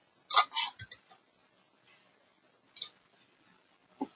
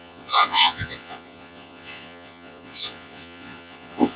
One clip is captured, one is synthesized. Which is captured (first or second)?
first